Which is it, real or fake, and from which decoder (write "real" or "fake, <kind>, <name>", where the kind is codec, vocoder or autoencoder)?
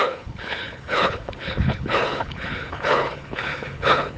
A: fake, codec, HILCodec